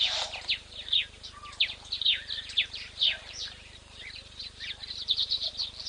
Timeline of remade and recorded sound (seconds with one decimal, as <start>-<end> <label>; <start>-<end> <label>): 0.0-3.2 recorded; 3.2-5.5 remade; 5.5-5.9 recorded